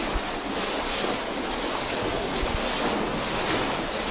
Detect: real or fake real